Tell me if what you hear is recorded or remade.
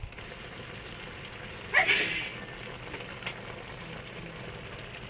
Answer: recorded